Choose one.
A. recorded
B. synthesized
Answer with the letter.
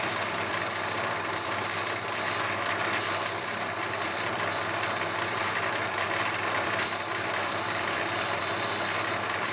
B